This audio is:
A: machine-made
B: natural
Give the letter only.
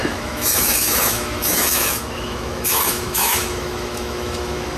A